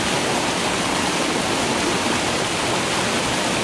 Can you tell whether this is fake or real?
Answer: real